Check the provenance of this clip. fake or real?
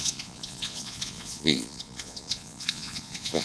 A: fake